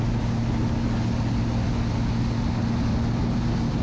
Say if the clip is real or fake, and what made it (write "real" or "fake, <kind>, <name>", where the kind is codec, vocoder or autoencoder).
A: real